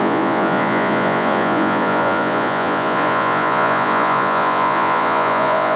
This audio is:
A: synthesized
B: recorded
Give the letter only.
A